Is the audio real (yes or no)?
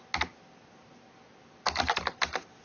yes